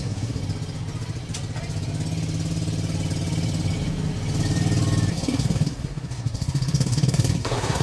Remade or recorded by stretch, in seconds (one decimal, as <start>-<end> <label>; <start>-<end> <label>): 0.0-0.4 remade; 0.4-5.1 recorded; 5.1-7.8 remade